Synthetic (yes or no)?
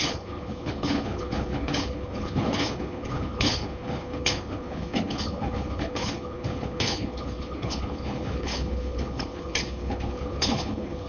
yes